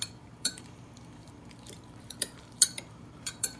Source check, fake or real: fake